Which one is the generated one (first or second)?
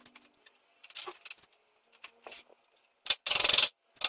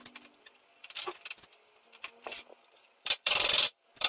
second